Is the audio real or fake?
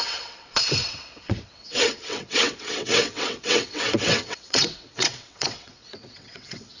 fake